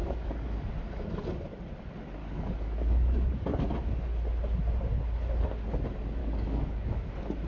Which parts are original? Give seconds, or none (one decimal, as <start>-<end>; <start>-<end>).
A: 0.7-2.2; 3.6-6.2; 7.1-7.5